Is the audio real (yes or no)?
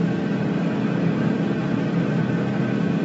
yes